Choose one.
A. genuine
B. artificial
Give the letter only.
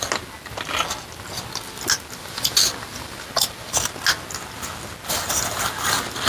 A